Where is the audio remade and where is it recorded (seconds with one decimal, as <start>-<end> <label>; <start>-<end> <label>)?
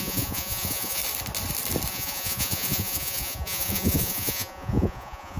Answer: 0.0-1.0 remade; 1.0-1.9 recorded; 1.9-5.4 remade